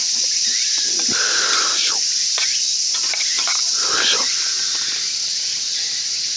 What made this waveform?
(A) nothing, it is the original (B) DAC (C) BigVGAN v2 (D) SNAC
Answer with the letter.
A